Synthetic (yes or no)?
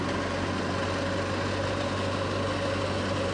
no